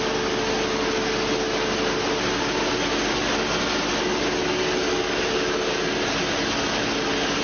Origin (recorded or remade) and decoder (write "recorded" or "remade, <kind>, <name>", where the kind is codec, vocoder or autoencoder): recorded